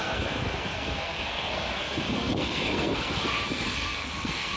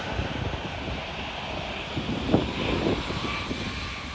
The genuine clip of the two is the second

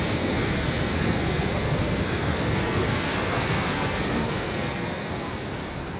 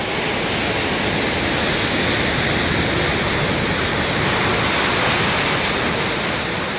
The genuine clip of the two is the second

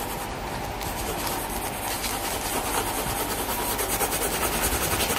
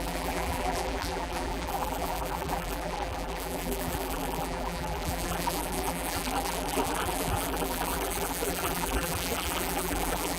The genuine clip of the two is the first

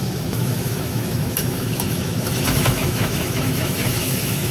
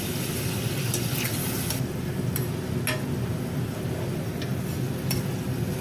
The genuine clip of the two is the second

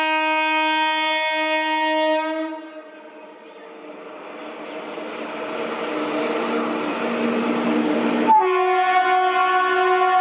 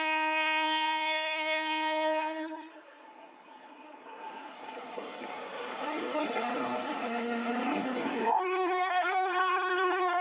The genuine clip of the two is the first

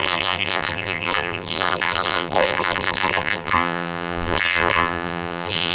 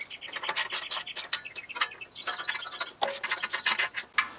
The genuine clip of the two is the second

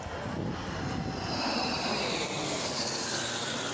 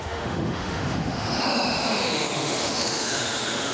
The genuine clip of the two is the first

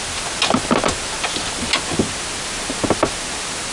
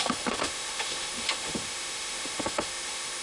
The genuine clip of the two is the first